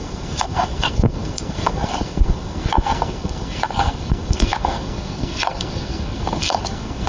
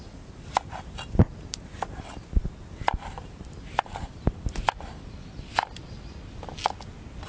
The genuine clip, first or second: second